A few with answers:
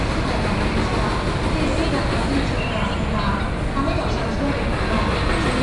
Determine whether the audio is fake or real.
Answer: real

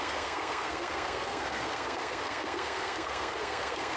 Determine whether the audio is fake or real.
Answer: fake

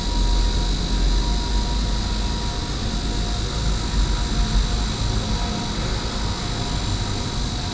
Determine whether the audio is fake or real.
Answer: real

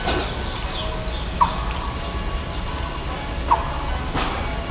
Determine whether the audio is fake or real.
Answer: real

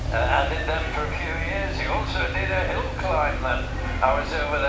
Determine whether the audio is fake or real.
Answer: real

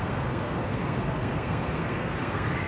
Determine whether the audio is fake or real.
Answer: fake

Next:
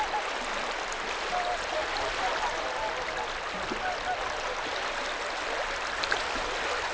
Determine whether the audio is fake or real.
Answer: real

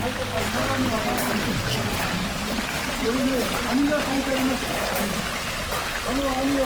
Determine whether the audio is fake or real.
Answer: real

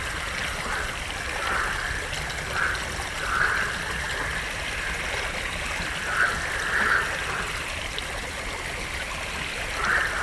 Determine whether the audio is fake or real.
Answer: real